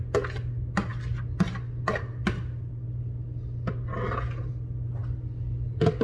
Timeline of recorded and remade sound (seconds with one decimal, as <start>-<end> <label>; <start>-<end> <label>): 0.0-6.0 recorded